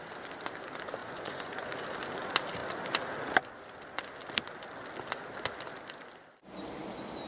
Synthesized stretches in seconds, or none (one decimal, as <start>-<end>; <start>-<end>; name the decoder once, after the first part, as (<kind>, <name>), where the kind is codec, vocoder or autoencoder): 1.0-1.7 (vocoder, Vocos)